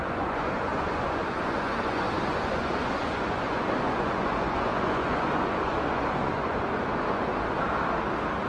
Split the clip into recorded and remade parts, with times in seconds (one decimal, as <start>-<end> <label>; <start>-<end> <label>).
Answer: 0.0-7.3 remade; 7.3-8.5 recorded